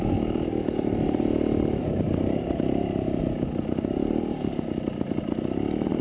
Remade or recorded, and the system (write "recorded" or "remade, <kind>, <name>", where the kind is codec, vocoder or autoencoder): recorded